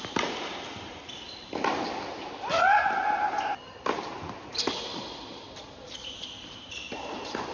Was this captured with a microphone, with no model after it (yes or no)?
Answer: yes